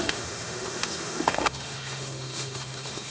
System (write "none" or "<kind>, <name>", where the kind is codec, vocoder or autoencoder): autoencoder, DAC-VAE